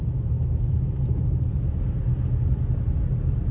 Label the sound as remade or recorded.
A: recorded